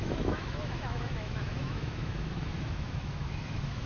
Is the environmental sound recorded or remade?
remade